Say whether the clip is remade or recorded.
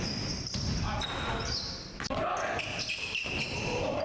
recorded